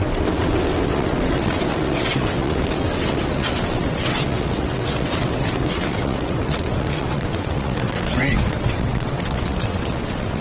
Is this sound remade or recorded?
remade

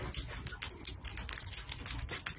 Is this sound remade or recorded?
recorded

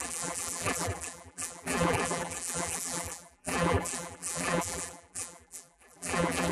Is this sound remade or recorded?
remade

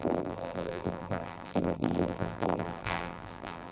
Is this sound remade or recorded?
remade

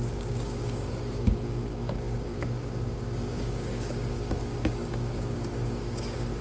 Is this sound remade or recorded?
remade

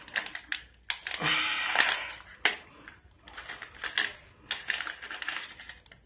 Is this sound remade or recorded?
recorded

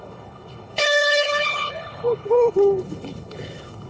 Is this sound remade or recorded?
remade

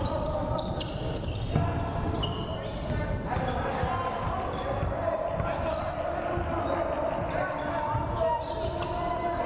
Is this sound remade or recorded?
recorded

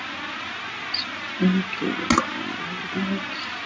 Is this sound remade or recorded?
recorded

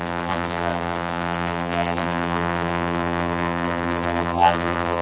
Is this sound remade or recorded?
remade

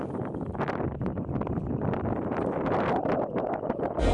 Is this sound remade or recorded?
recorded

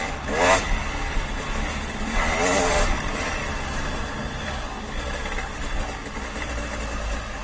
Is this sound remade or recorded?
recorded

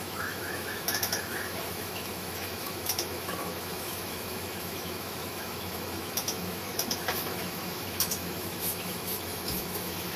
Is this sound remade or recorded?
remade